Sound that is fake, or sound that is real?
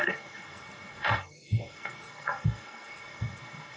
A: fake